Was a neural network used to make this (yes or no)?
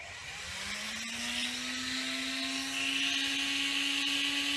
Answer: no